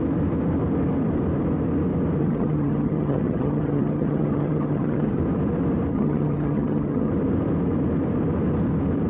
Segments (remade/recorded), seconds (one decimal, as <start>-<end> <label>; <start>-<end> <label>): 0.0-2.2 recorded; 2.2-5.2 remade; 5.2-5.9 recorded; 5.9-7.1 remade; 7.1-9.1 recorded